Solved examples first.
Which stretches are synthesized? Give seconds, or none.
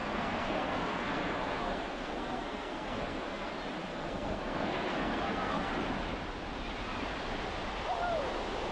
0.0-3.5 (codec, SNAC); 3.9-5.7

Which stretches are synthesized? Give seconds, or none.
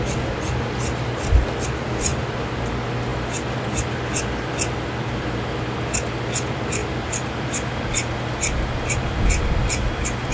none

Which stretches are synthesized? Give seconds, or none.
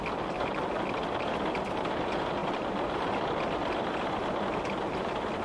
none